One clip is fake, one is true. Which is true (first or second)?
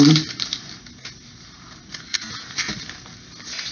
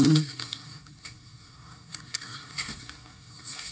first